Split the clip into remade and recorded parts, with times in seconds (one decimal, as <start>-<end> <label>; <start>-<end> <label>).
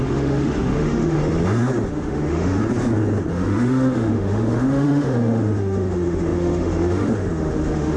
0.0-1.2 remade; 1.2-1.9 recorded; 1.9-2.6 remade; 2.6-3.3 recorded; 3.3-8.0 remade